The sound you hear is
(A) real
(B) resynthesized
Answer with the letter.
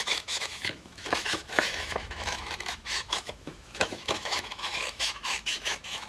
B